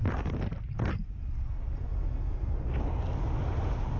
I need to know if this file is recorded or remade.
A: recorded